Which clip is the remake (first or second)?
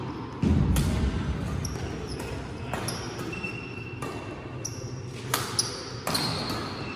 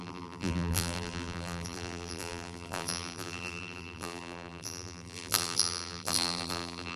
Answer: second